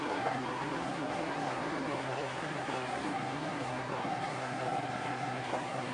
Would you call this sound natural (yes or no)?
no